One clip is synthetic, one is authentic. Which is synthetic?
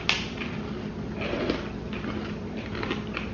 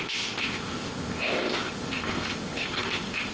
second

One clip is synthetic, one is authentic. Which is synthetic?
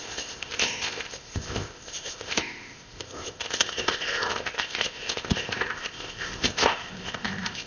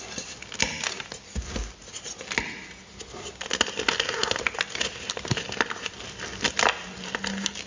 first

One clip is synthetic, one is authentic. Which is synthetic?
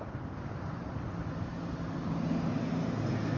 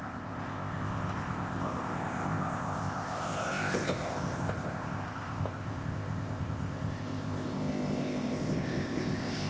second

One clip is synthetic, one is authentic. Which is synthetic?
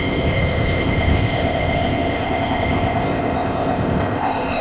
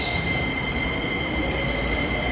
first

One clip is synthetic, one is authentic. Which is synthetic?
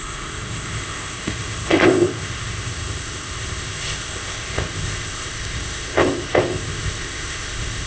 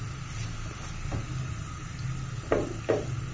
first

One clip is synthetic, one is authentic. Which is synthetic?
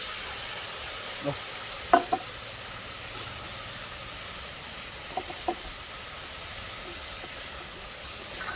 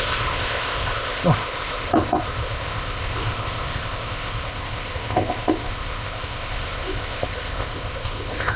second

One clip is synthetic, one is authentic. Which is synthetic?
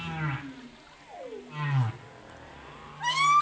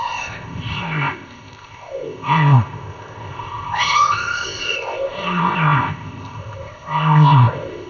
second